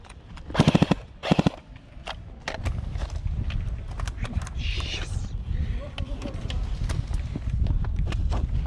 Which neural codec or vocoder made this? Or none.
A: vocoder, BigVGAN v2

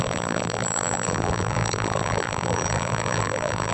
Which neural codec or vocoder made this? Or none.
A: vocoder, BigVGAN v2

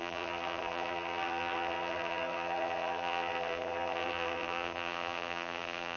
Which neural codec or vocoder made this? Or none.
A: vocoder, BigVGAN v2